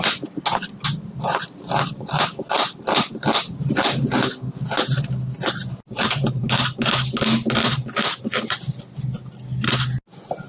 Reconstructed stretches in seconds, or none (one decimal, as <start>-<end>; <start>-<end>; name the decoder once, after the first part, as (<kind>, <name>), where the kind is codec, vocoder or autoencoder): none